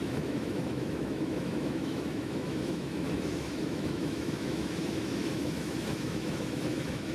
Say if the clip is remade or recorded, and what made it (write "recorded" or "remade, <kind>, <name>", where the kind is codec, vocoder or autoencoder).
remade, autoencoder, DAC-VAE